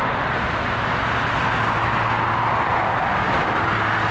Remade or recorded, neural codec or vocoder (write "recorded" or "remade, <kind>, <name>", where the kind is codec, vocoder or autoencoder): recorded